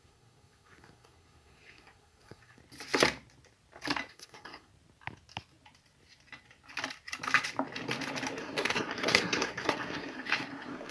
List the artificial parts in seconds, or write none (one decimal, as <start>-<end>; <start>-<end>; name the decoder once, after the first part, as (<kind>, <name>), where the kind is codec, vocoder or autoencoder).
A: 0.0-2.6 (codec, SNAC); 4.1-4.7; 8.4-10.9